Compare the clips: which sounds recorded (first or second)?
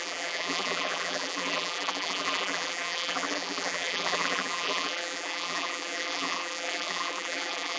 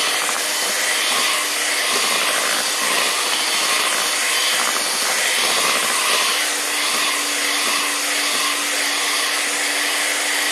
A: second